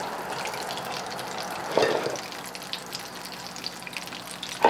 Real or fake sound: real